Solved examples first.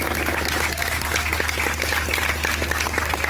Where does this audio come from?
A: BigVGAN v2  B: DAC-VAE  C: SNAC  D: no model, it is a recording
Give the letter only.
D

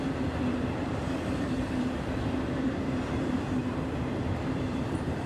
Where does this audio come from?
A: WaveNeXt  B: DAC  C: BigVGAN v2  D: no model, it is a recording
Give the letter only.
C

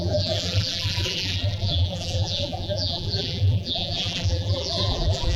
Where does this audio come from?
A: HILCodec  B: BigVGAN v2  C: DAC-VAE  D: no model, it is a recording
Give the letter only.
B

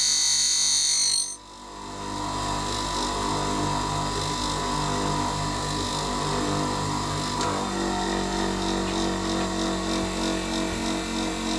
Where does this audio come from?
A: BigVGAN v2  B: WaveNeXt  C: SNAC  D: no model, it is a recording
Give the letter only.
D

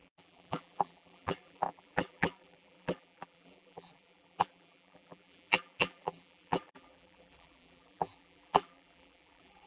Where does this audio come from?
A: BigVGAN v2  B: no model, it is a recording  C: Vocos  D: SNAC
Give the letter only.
A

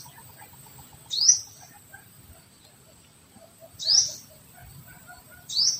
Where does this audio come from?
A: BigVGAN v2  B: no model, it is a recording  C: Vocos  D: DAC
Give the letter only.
B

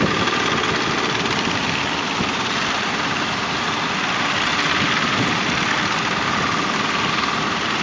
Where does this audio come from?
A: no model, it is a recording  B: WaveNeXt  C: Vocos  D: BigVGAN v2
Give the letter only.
A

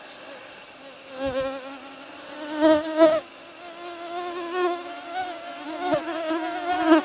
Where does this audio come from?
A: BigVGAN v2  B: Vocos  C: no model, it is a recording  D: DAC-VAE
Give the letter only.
C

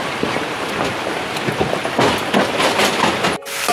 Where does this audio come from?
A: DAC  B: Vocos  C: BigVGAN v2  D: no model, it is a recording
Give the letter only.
D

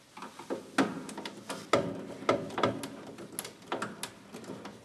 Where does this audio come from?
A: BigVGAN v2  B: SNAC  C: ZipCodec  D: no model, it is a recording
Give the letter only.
D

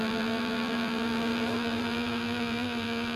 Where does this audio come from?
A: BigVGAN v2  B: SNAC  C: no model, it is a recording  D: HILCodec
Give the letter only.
A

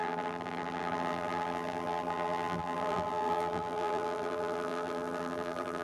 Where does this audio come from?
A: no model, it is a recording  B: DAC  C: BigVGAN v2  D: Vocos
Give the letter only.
C